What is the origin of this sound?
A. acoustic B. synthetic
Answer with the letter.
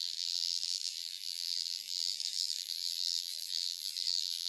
B